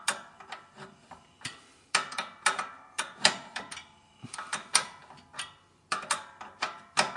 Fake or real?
fake